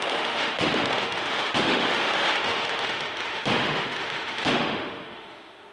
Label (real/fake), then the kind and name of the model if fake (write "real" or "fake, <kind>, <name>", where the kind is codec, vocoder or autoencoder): fake, autoencoder, DAC-VAE